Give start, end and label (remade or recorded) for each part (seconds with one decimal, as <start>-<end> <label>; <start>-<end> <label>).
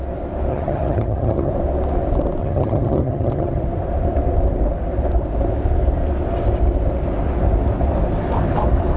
0.0-0.5 recorded; 0.5-1.5 remade; 1.5-2.4 recorded; 2.4-3.6 remade; 3.6-9.0 recorded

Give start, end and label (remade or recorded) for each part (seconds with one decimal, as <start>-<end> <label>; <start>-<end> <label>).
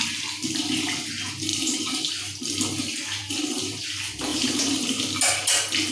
0.0-1.5 recorded; 1.5-2.1 remade; 2.1-3.2 recorded; 3.2-3.8 remade; 3.8-4.3 recorded; 4.3-5.0 remade; 5.0-5.9 recorded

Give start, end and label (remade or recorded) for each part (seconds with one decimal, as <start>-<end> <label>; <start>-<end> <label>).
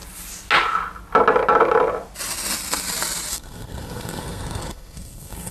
0.0-3.3 recorded; 3.3-5.5 remade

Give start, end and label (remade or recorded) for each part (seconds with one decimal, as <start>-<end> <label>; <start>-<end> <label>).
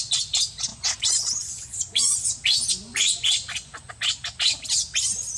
0.0-0.7 recorded; 0.7-3.9 remade; 3.9-5.4 recorded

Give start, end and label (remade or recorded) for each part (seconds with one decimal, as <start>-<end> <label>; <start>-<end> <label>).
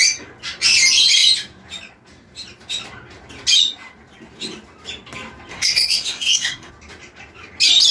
0.0-5.5 recorded; 5.5-6.7 remade; 6.7-7.9 recorded